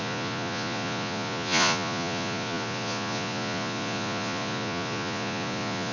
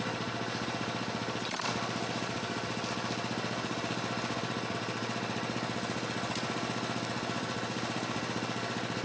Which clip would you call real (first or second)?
second